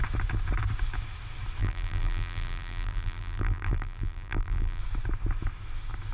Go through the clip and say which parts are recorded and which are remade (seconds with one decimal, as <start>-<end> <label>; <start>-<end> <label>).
0.0-1.6 recorded; 1.6-4.8 remade; 4.8-6.1 recorded